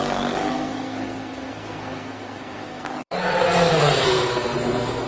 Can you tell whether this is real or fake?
fake